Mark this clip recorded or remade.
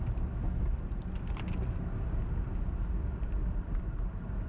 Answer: recorded